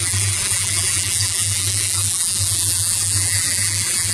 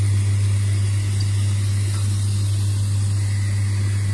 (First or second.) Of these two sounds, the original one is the second